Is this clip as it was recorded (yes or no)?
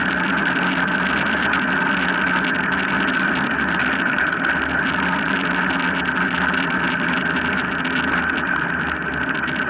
yes